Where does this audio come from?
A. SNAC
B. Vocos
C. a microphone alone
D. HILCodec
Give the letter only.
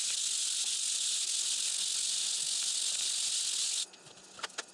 C